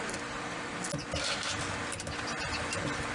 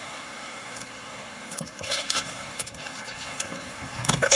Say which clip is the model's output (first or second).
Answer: second